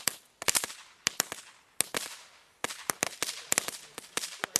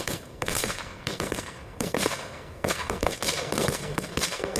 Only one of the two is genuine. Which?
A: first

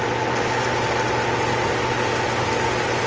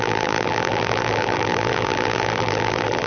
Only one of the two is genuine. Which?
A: first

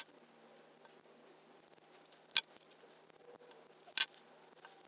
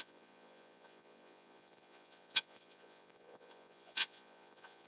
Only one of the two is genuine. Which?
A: first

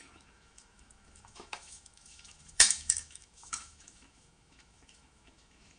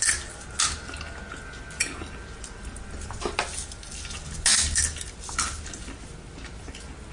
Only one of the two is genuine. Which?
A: second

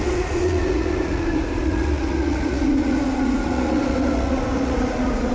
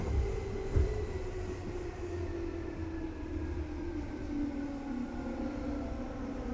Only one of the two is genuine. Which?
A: second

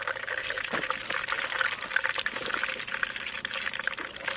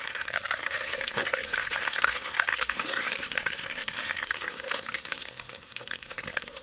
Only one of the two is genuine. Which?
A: first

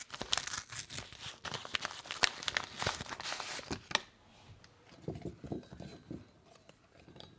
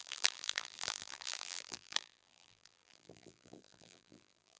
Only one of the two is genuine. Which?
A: first